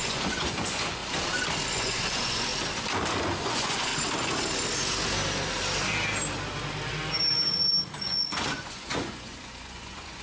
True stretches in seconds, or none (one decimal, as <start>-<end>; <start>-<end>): 1.0-1.7; 2.5-3.4; 3.9-8.0